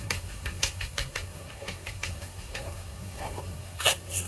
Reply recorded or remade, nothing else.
remade